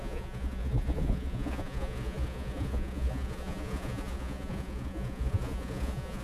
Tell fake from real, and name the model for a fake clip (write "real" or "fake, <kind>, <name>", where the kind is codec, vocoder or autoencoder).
fake, vocoder, Vocos